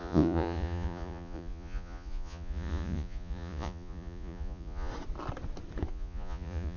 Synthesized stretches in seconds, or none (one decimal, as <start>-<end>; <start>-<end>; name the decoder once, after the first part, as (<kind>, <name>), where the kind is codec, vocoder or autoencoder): 0.0-4.9 (vocoder, Vocos); 5.9-6.8